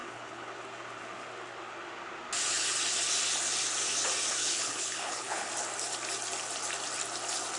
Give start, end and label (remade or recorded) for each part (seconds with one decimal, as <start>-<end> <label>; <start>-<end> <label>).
0.0-0.5 remade; 0.5-4.4 recorded; 4.4-5.5 remade; 5.5-7.6 recorded